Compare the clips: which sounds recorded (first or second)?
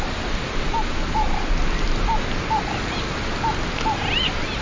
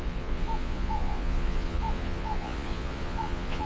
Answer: first